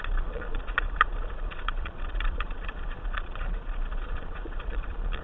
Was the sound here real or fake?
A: fake